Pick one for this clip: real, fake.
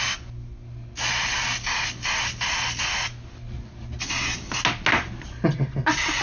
real